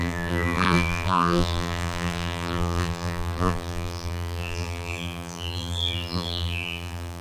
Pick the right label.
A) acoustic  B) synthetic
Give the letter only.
B